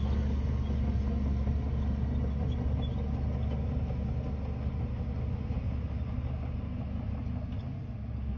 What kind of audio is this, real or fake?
real